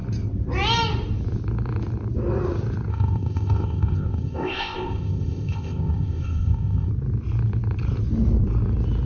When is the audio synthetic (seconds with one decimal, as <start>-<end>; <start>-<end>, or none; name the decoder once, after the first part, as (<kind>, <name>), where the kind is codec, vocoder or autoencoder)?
2.9-6.9 (codec, ZipCodec)